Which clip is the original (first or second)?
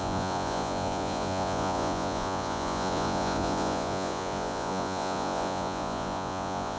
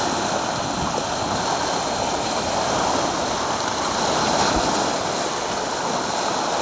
second